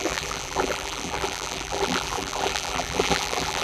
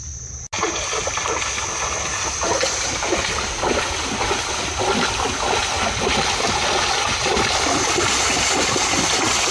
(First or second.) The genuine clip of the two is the second